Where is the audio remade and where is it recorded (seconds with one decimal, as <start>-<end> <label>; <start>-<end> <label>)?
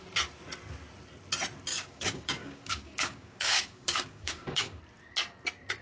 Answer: 0.0-1.7 recorded; 1.7-4.8 remade; 4.8-5.8 recorded